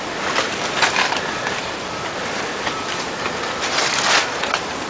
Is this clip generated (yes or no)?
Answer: yes